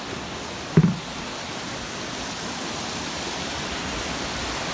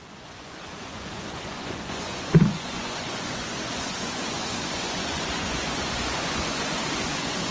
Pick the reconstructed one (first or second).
second